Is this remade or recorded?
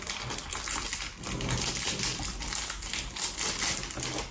recorded